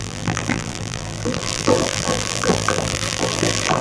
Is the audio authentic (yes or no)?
no